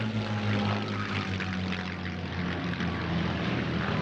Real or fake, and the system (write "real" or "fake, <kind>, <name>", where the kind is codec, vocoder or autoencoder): real